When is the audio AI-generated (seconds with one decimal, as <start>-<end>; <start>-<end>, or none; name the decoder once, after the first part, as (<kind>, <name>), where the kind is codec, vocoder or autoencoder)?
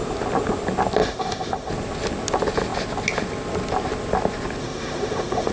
1.0-1.7 (autoencoder, DAC-VAE); 4.6-5.5